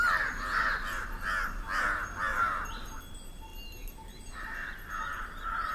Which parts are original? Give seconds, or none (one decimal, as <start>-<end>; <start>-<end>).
0.0-2.3; 3.0-5.7